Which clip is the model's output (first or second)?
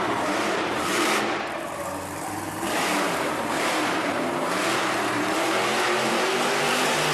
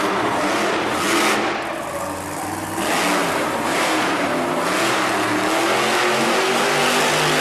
first